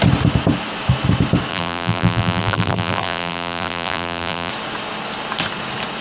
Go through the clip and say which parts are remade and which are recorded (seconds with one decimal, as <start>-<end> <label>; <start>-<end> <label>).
0.0-1.5 recorded; 1.5-4.5 remade; 4.5-6.0 recorded